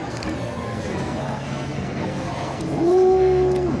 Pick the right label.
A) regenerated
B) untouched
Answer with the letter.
A